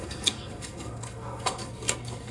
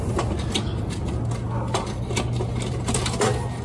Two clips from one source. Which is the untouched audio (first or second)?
second